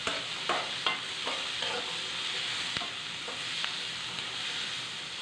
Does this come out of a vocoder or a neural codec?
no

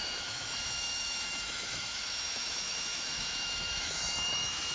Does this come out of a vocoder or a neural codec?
yes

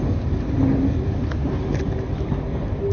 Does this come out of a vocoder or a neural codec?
no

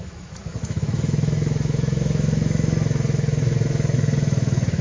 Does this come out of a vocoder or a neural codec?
yes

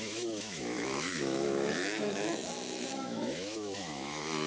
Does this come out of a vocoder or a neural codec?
yes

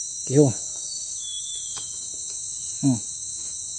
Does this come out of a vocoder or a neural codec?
yes